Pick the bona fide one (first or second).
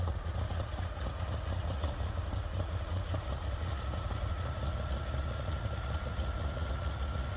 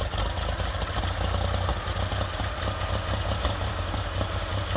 second